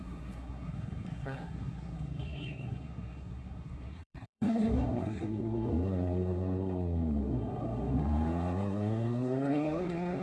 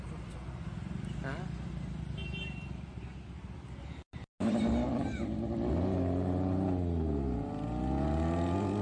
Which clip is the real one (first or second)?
second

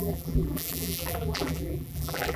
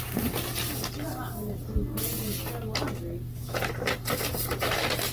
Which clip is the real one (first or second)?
second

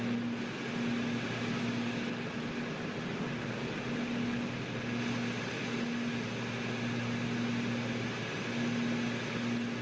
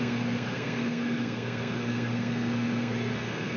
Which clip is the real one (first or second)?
first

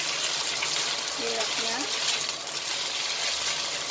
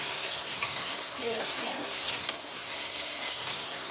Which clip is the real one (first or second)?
first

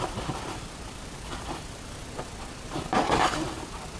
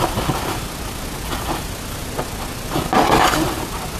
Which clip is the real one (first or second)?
second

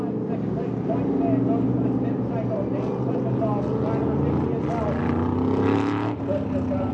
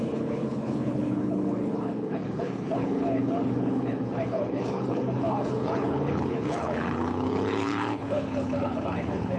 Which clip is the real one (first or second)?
first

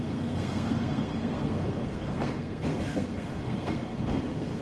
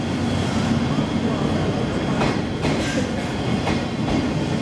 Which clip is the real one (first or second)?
second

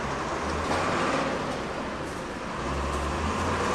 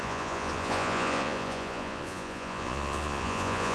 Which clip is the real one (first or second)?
first